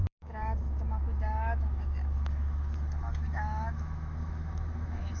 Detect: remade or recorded remade